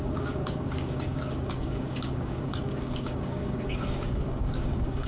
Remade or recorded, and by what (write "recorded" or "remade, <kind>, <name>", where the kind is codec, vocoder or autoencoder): remade, codec, DAC